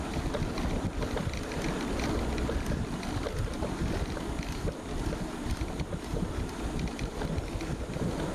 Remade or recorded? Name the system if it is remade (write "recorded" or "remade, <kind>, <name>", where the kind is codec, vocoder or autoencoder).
recorded